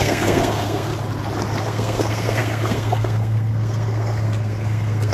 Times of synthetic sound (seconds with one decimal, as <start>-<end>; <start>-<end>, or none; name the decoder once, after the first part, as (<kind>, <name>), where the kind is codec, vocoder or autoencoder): 0.0-0.9 (codec, SNAC); 1.6-5.1